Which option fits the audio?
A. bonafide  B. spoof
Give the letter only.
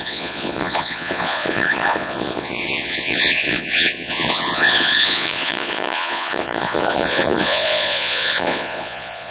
B